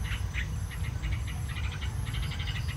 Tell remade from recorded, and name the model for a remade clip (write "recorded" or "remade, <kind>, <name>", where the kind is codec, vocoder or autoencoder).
recorded